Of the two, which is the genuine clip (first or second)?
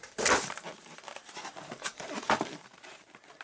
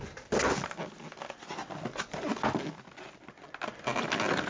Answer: second